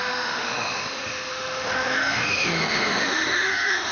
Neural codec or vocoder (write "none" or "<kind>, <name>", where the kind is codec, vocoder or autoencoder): autoencoder, DAC-VAE